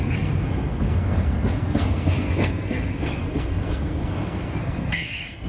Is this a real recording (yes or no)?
no